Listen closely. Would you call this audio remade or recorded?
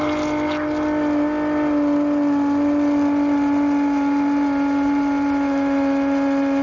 recorded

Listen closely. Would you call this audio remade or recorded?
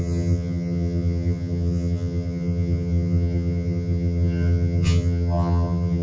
remade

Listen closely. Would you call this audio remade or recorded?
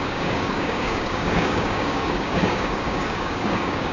remade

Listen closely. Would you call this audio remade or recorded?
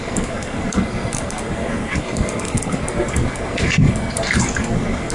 remade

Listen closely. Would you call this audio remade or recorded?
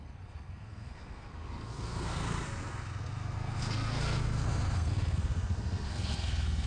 remade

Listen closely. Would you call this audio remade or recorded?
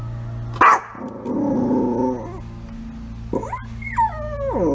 recorded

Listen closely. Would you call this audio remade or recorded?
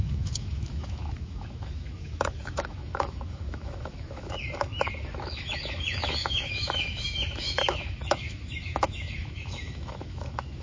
remade